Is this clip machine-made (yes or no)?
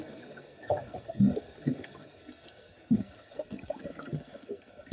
yes